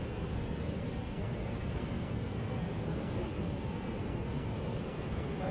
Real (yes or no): no